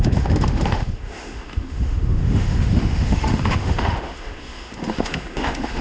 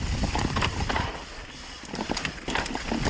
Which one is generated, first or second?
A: first